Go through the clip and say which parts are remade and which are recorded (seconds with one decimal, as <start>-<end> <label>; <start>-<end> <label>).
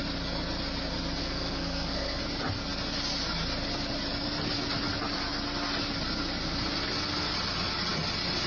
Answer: 0.0-1.2 recorded; 1.2-2.2 remade; 2.2-8.5 recorded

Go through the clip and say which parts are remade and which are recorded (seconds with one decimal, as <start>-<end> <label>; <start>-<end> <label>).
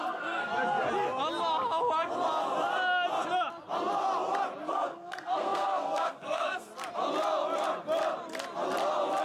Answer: 0.0-0.5 remade; 0.5-4.6 recorded; 4.6-6.7 remade; 6.7-9.2 recorded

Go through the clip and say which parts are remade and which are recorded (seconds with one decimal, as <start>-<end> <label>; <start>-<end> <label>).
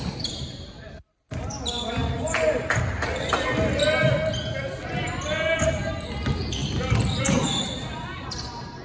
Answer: 0.0-8.8 recorded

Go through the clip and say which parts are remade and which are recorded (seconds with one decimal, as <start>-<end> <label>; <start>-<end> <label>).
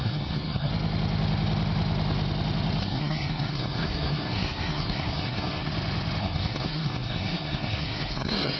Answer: 0.0-0.7 remade; 0.7-2.8 recorded; 2.8-5.7 remade; 5.7-6.2 recorded; 6.2-8.6 remade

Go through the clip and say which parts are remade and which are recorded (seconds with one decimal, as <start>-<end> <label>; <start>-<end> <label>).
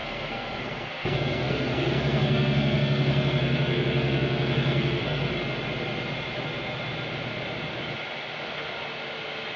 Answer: 0.0-5.3 remade; 5.3-9.6 recorded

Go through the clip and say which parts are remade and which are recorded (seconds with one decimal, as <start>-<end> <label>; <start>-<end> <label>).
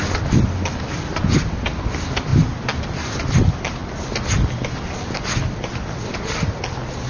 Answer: 0.0-7.1 recorded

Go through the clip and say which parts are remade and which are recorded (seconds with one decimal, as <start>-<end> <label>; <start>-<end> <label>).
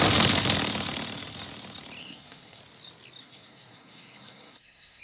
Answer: 0.0-2.0 recorded; 2.0-2.6 remade; 2.6-3.2 recorded; 3.2-5.0 remade